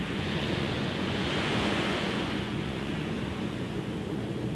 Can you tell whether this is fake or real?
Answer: fake